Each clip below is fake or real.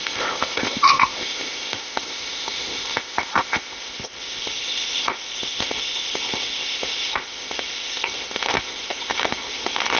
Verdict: fake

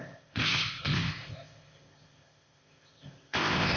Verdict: fake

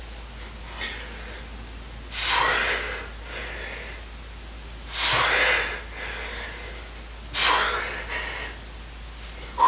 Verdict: real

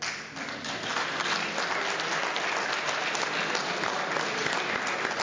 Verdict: real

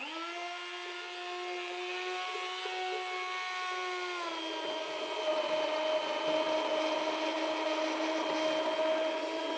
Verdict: real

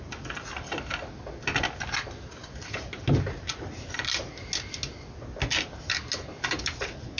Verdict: real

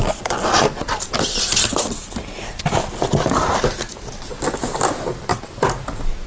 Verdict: real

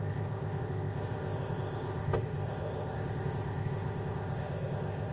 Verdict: fake